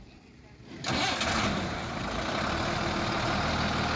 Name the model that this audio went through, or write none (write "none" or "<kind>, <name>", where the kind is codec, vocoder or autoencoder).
none